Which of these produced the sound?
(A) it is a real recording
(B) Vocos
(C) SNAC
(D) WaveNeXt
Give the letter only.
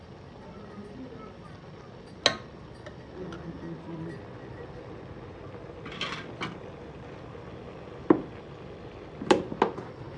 A